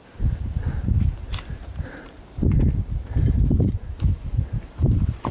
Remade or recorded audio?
remade